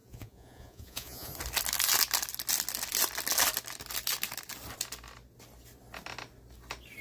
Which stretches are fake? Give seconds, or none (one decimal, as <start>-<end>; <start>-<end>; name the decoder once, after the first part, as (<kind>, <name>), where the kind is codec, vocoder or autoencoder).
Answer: 0.0-1.3 (vocoder, Vocos)